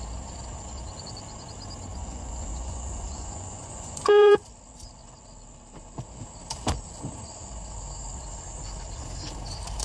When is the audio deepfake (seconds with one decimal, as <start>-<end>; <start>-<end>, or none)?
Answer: 1.9-4.3